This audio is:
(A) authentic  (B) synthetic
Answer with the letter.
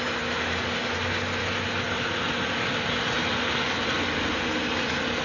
A